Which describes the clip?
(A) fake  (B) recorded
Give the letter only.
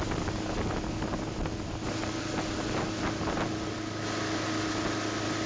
B